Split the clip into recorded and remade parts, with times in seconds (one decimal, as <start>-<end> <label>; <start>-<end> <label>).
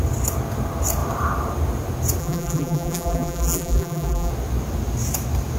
0.0-2.2 recorded; 2.2-4.3 remade; 4.3-5.6 recorded